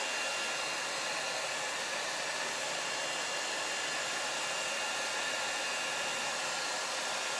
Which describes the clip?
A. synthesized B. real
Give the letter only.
B